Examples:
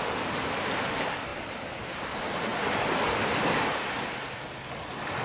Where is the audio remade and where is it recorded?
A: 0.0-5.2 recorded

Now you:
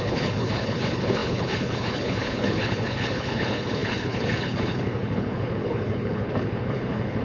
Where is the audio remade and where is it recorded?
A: 0.0-7.2 remade

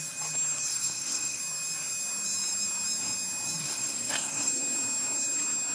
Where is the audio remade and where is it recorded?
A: 0.0-0.7 recorded; 0.7-1.4 remade; 1.4-3.6 recorded; 3.6-4.5 remade; 4.5-5.7 recorded